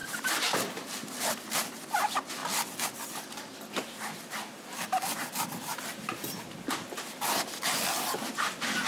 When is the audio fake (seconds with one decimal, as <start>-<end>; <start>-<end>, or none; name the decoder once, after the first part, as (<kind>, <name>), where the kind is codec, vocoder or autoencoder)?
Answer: 0.0-1.1 (vocoder, BigVGAN v2); 5.7-6.2